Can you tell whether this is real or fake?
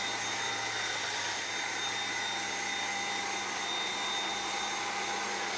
real